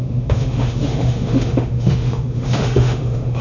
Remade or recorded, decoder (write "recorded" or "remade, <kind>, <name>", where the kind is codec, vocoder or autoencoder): remade, autoencoder, DAC-VAE